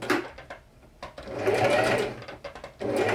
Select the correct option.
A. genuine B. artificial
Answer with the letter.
A